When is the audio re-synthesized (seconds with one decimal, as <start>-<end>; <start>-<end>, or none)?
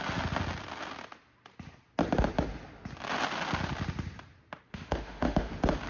4.7-5.5